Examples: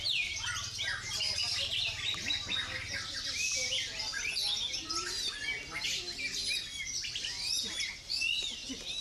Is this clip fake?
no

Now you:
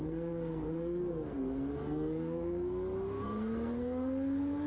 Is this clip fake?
yes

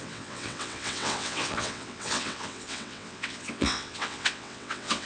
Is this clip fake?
yes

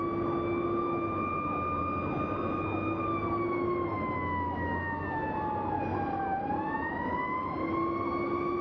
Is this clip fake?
no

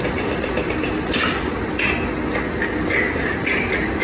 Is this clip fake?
no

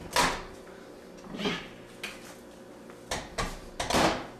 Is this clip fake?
no